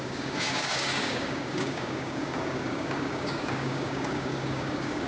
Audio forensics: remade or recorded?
remade